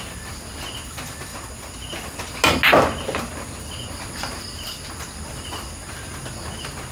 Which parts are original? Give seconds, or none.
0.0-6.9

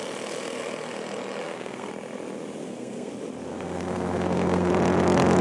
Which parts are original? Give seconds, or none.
0.0-1.4; 1.9-2.6; 3.1-3.5; 4.7-5.4

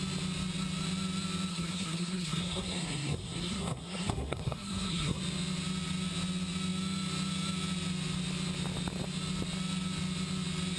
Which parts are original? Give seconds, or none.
0.0-1.5; 5.2-10.8